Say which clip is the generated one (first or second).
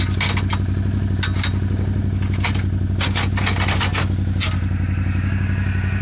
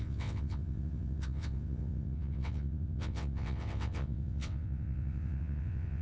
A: second